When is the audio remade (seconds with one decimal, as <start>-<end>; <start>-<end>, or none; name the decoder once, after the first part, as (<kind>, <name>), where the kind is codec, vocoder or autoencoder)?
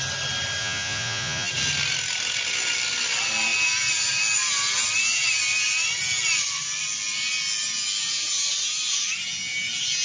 0.6-1.5 (vocoder, Vocos)